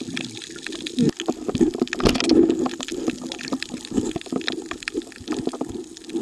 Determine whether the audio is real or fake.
real